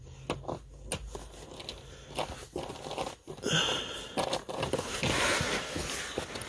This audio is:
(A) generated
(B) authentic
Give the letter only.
B